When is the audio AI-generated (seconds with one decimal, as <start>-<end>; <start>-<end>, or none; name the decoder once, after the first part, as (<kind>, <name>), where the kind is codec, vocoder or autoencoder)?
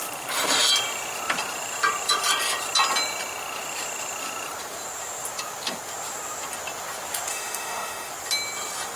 7.3-8.1 (autoencoder, DAC-VAE)